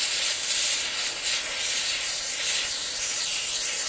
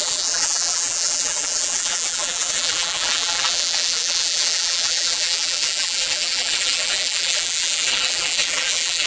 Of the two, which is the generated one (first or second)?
second